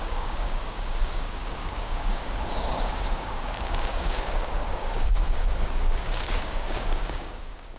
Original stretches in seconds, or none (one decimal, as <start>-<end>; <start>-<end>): none